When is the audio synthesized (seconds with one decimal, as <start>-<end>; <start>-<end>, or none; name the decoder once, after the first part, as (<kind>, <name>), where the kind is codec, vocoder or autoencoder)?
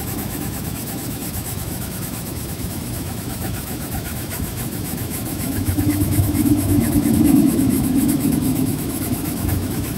0.0-10.0 (autoencoder, DAC-VAE)